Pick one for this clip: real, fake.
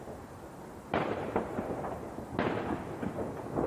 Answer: real